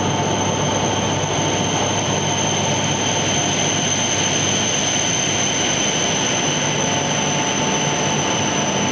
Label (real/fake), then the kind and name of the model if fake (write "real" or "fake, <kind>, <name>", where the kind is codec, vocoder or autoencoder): real